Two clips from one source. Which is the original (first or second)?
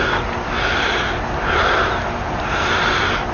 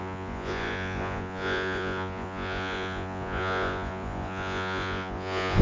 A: first